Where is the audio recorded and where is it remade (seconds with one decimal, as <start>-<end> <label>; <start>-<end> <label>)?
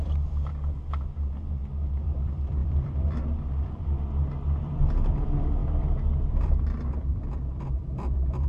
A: 0.0-0.5 remade; 0.5-2.0 recorded; 2.0-5.6 remade; 5.6-6.2 recorded; 6.2-8.5 remade